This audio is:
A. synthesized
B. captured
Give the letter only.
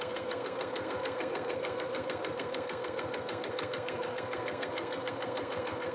A